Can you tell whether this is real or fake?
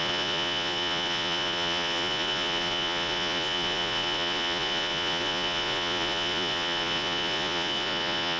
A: fake